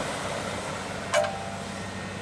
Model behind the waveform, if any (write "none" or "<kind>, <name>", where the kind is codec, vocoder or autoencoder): none